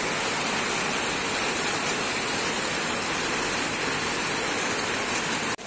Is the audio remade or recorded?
recorded